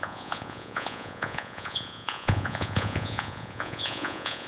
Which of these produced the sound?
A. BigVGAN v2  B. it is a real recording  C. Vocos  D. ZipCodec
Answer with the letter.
C